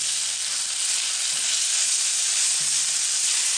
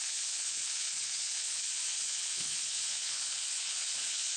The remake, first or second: second